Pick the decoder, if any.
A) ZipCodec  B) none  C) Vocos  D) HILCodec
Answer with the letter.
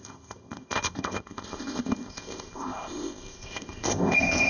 A